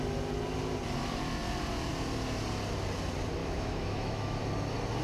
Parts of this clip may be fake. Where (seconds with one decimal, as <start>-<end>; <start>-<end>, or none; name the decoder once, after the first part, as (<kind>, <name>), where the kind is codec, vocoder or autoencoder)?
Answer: 3.4-4.4 (autoencoder, DAC-VAE)